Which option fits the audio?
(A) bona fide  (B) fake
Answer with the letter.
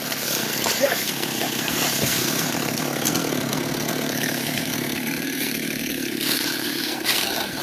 B